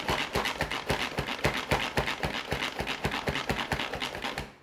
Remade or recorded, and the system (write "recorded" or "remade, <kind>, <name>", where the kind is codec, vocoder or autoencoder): recorded